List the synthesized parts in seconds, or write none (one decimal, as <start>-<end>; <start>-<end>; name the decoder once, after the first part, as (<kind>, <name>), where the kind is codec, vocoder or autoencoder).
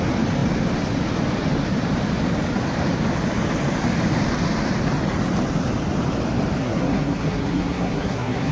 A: 6.6-8.5 (codec, SNAC)